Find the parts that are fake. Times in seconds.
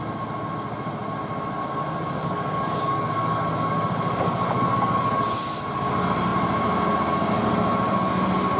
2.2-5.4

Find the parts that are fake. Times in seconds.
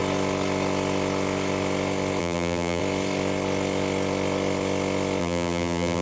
2.2-2.8; 5.2-6.0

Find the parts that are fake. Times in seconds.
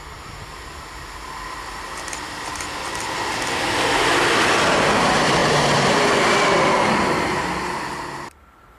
none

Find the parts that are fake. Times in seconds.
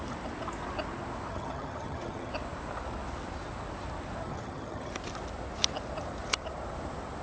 1.3-2.3; 4.2-4.9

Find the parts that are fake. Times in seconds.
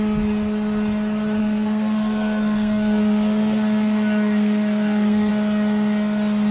1.4-5.3